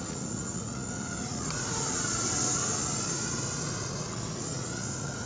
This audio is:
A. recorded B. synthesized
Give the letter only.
B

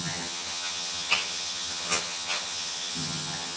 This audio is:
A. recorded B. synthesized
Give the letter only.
B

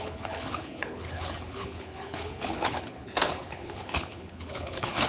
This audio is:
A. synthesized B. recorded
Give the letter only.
A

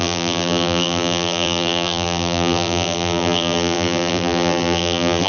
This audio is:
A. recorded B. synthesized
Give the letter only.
B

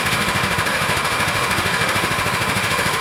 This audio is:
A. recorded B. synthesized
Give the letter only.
B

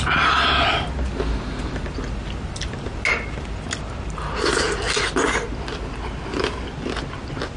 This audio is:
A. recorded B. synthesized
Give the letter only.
A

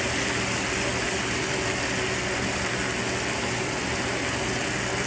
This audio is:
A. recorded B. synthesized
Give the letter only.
A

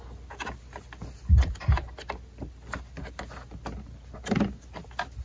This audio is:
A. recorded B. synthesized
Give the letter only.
A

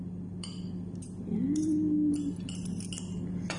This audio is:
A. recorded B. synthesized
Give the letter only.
B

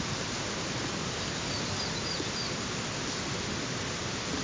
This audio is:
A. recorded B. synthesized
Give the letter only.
A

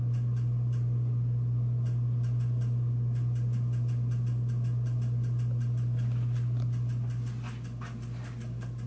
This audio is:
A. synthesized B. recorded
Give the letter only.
B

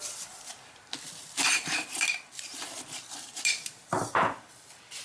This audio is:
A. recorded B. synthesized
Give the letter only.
B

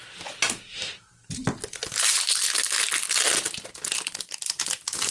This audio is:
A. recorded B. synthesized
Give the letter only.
A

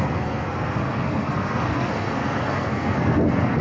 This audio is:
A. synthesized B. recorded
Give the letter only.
A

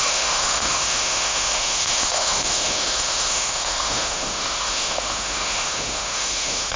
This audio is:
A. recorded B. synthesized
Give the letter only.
B